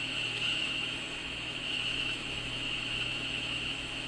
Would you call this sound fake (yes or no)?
yes